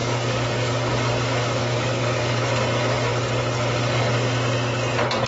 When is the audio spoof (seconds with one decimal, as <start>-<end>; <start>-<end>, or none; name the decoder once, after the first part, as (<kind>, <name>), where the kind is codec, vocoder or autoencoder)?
0.0-2.5 (codec, DAC)